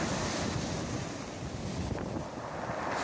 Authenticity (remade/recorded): recorded